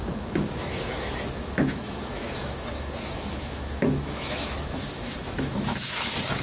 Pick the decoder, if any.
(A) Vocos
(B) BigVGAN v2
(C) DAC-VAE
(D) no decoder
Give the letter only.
C